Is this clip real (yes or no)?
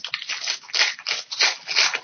yes